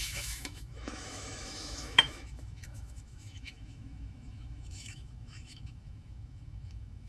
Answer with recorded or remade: remade